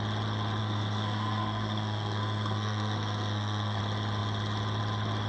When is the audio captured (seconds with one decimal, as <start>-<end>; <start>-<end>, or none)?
0.0-0.6; 3.8-5.3